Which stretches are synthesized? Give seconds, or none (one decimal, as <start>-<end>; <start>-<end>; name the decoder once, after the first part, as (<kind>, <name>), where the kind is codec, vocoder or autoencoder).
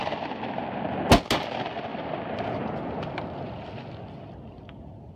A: none